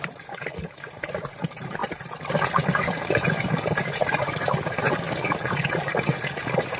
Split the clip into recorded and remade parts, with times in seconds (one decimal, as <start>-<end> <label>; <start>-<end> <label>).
0.0-1.8 remade; 1.8-2.5 recorded; 2.5-6.8 remade